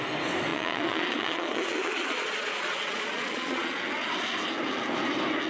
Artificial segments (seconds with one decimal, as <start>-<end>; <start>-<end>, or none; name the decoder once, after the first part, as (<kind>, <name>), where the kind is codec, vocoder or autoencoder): 0.5-3.8 (vocoder, Vocos)